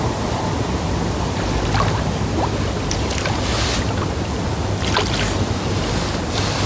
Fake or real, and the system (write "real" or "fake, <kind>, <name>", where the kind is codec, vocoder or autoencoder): real